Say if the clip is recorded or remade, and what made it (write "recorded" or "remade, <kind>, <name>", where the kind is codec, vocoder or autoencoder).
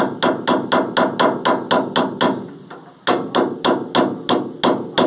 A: recorded